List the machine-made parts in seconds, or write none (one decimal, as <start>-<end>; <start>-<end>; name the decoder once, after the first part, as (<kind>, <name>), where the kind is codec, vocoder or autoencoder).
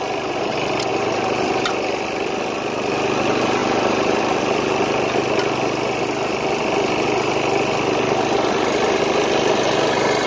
0.9-1.7 (vocoder, BigVGAN v2); 3.6-4.2